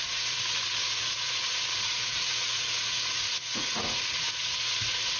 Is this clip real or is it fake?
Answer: fake